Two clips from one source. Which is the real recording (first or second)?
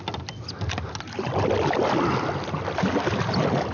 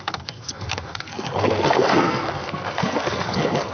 first